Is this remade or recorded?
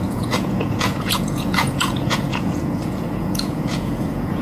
remade